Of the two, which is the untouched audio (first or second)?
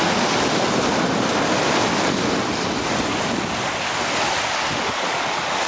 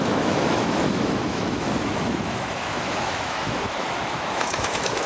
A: first